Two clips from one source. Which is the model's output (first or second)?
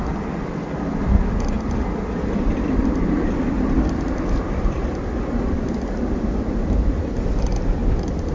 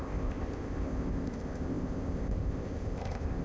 second